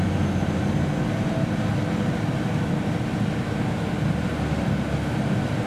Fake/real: real